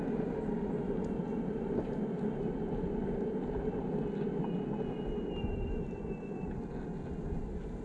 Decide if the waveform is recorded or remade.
recorded